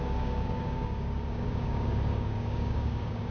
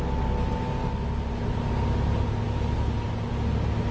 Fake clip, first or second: first